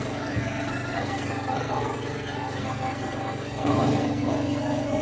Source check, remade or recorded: remade